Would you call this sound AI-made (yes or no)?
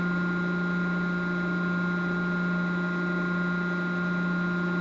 no